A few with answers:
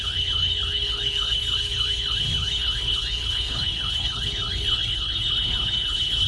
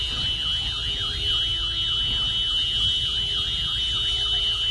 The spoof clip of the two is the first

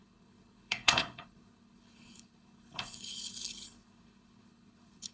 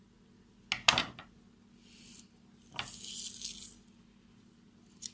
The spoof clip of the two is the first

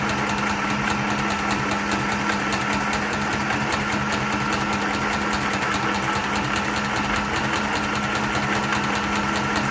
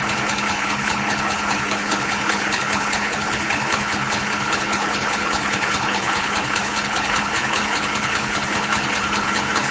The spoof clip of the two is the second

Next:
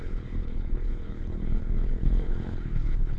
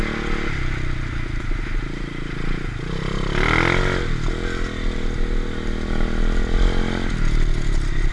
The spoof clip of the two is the first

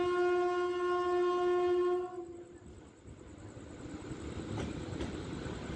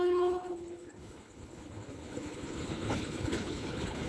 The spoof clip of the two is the second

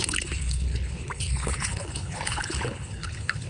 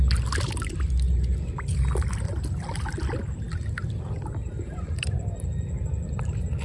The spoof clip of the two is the first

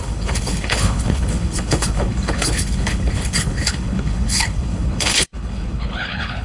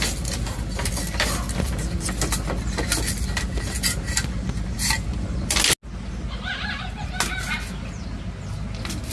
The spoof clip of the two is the first